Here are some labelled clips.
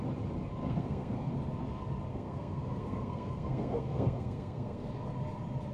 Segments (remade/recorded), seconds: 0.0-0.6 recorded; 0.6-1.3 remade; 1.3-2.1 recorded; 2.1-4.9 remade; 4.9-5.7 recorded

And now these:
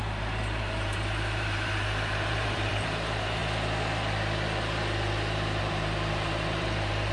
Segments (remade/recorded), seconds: 0.0-3.4 remade; 3.4-5.6 recorded; 5.6-7.1 remade

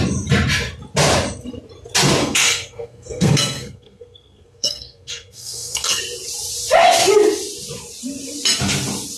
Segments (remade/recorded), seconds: 0.0-2.2 recorded; 2.2-6.0 remade; 6.0-9.2 recorded

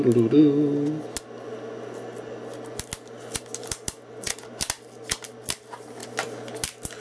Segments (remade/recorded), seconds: 0.0-7.0 recorded